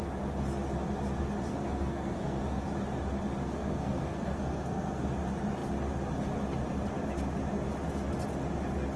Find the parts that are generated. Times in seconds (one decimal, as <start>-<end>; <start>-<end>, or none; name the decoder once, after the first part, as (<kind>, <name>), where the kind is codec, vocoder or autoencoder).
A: 1.5-2.4 (codec, SNAC); 3.4-5.1